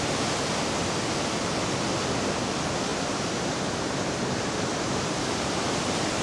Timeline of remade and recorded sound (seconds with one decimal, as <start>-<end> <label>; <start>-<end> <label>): 0.0-2.9 recorded; 2.9-5.8 remade; 5.8-6.2 recorded